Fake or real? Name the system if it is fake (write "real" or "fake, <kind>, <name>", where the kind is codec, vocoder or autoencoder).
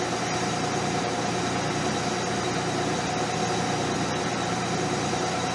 real